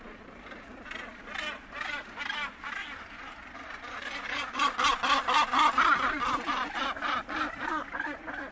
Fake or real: real